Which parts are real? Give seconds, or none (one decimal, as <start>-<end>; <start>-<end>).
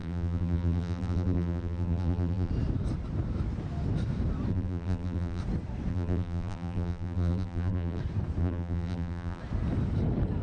2.5-4.5; 5.4-5.9; 8.0-8.4; 9.4-10.4